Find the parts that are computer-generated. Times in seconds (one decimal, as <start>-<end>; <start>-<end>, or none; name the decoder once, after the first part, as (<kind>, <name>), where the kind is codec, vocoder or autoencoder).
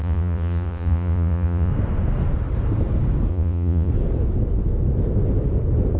0.0-1.7 (vocoder, Vocos); 3.3-3.9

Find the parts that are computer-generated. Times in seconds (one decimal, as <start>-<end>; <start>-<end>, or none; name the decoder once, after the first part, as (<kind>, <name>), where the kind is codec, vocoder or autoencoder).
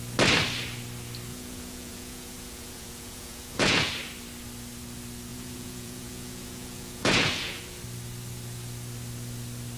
1.3-3.9 (vocoder, Vocos); 5.3-7.6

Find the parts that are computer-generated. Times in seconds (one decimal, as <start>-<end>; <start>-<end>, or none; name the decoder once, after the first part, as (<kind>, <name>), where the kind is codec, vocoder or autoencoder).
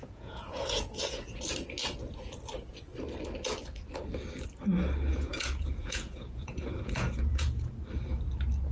0.0-1.4 (vocoder, Vocos); 5.1-7.7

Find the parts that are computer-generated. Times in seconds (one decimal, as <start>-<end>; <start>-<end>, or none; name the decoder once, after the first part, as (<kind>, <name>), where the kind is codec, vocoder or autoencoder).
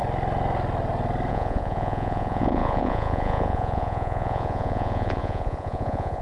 1.3-6.2 (vocoder, Vocos)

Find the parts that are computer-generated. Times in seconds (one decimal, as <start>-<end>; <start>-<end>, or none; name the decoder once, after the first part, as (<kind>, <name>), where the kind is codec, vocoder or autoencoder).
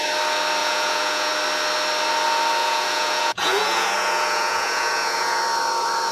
0.6-1.3 (vocoder, Vocos); 2.6-5.4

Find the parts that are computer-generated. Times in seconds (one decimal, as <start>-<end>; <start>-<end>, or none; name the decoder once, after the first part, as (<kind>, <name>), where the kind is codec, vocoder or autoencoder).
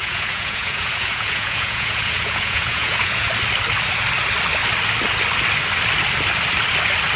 0.0-3.3 (vocoder, Vocos)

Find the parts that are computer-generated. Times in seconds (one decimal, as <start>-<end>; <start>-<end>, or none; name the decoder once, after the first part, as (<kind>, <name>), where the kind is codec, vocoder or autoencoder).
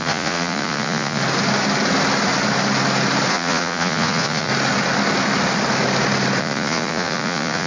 0.0-1.2 (vocoder, Vocos); 3.3-4.5; 6.4-7.7